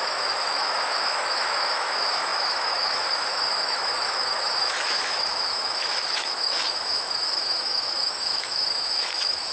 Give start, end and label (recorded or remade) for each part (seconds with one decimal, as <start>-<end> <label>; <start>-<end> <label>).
0.0-9.5 remade

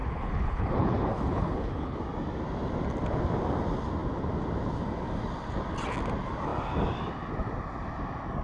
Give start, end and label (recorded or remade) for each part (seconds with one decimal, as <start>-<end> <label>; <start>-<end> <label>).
0.0-2.0 remade; 2.0-8.4 recorded

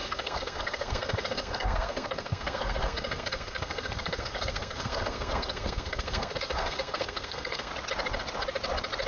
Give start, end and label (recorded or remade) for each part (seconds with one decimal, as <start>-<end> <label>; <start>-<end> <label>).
0.0-7.7 remade; 7.7-9.1 recorded

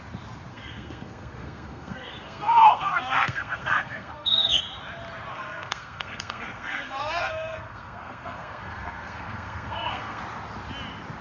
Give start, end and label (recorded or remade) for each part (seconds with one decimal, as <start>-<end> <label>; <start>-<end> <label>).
0.0-0.5 recorded; 0.5-4.6 remade; 4.6-5.3 recorded; 5.3-10.2 remade; 10.2-11.2 recorded

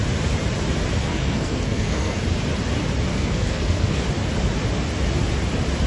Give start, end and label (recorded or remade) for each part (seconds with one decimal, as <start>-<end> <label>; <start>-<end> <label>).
0.0-1.0 recorded; 1.0-2.2 remade; 2.2-3.1 recorded; 3.1-4.0 remade; 4.0-5.9 recorded

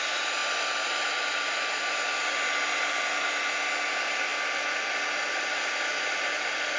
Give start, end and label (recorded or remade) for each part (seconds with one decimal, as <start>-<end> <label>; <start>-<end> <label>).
0.0-6.8 recorded